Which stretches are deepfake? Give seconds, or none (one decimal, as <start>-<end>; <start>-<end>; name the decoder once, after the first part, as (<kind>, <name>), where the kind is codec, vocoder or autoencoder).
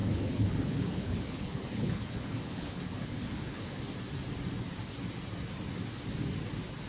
0.0-3.8 (codec, HILCodec)